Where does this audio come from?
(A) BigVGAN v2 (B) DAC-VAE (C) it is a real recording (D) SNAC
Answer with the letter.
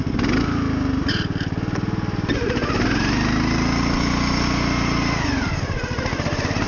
C